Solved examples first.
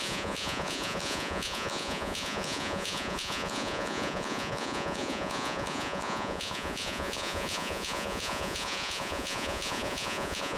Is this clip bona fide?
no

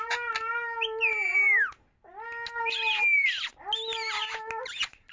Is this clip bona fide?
yes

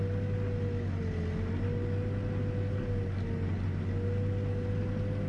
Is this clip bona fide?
yes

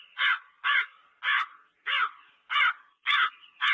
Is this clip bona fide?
yes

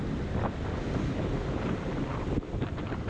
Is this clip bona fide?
yes